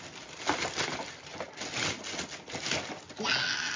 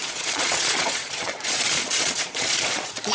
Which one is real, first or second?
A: first